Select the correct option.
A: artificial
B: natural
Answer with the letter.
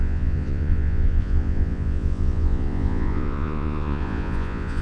A